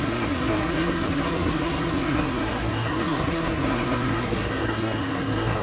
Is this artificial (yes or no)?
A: yes